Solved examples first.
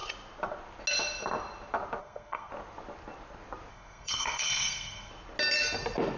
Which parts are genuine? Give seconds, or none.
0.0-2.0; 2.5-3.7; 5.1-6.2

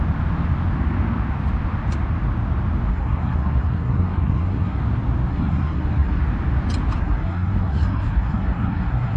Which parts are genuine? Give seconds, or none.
0.0-2.9; 4.8-5.3; 6.2-7.0

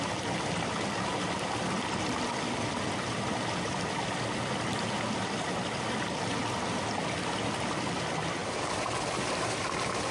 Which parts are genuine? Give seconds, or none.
0.0-8.4; 9.4-10.1

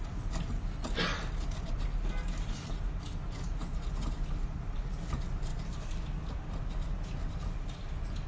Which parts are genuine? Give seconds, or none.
0.0-4.4; 5.0-5.5; 6.6-8.3

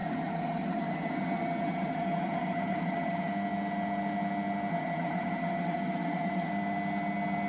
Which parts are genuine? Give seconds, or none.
3.3-4.7; 6.5-7.5

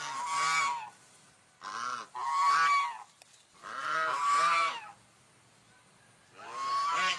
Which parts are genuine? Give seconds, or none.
0.0-7.2

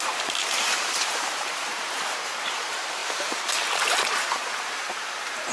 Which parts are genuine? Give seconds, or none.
3.0-3.9